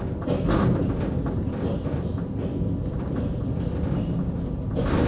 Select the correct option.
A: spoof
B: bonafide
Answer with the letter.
B